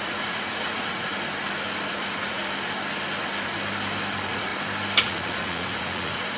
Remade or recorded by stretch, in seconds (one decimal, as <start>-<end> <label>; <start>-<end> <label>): 0.0-1.1 remade; 1.1-1.9 recorded; 1.9-2.4 remade; 2.4-4.1 recorded; 4.1-4.5 remade; 4.5-5.0 recorded; 5.0-6.4 remade